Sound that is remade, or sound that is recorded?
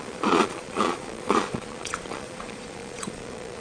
remade